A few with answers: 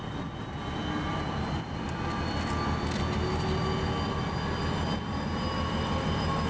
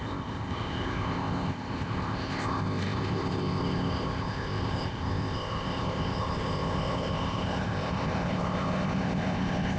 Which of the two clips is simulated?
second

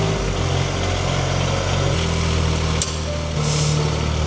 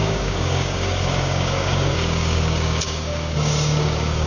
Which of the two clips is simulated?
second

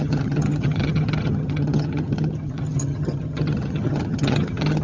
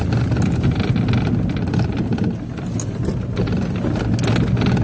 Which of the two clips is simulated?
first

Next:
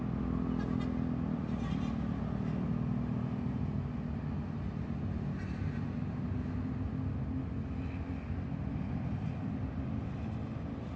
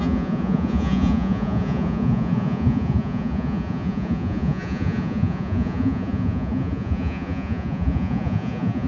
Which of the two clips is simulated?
second